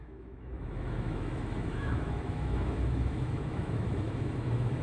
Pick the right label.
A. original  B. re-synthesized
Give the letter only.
B